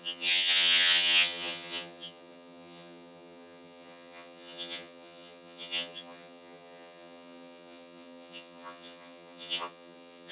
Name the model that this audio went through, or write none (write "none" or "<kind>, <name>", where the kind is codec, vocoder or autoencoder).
vocoder, HiFi-GAN